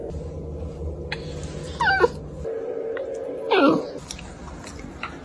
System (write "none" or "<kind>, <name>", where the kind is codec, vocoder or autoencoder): none